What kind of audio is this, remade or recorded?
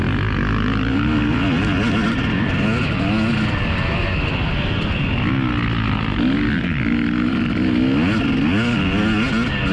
recorded